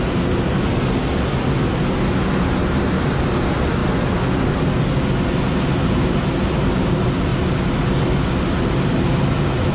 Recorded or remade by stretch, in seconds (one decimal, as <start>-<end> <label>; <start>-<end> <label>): 0.0-9.7 recorded